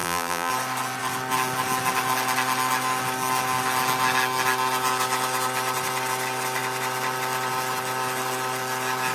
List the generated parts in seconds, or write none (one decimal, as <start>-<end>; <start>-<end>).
0.0-0.5